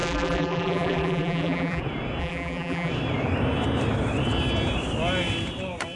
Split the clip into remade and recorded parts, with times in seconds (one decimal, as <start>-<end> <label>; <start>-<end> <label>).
0.0-1.8 remade; 1.8-2.2 recorded; 2.2-2.9 remade; 2.9-6.0 recorded

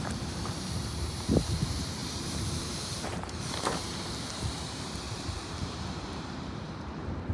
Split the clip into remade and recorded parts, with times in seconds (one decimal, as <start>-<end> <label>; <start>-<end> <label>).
0.0-7.3 remade

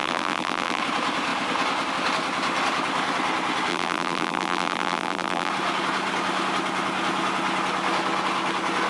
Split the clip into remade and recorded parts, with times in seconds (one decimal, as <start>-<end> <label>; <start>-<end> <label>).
0.0-0.8 remade; 0.8-3.7 recorded; 3.7-5.5 remade; 5.5-8.9 recorded

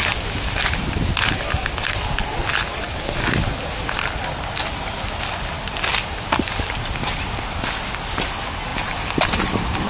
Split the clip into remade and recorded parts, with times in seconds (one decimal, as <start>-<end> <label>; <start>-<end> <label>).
0.0-8.7 recorded; 8.7-9.9 remade

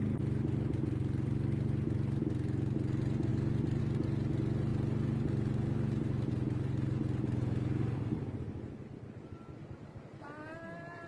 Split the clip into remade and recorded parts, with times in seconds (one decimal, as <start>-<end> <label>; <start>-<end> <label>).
0.0-11.1 recorded

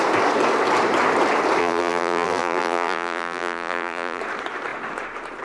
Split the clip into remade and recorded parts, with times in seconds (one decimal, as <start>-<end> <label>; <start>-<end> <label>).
0.0-1.6 recorded; 1.6-4.2 remade; 4.2-5.4 recorded

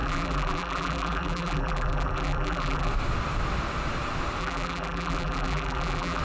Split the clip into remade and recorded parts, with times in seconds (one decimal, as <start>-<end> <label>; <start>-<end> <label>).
0.0-2.9 remade; 2.9-4.4 recorded; 4.4-6.2 remade